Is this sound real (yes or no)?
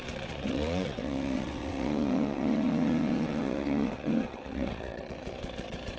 no